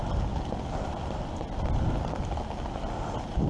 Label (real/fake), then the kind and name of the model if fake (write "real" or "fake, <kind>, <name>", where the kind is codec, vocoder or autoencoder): real